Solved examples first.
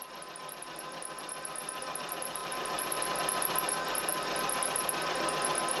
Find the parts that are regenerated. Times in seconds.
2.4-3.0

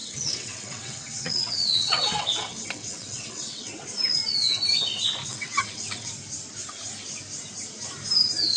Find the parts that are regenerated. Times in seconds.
0.0-3.7; 5.3-6.1

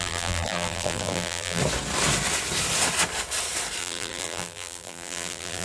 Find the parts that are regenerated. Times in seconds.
0.0-1.6; 3.8-5.6

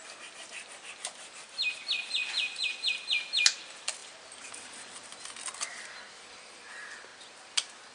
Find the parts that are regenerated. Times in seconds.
none

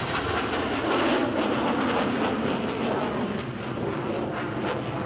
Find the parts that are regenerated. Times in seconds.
none